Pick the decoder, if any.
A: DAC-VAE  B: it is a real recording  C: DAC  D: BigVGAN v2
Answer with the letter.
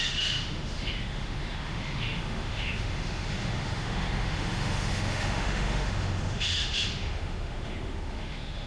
A